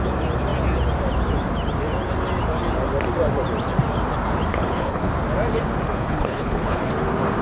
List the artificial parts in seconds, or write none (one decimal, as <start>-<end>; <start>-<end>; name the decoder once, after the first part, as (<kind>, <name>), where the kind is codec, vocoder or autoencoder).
4.5-5.1 (codec, HILCodec); 5.9-6.9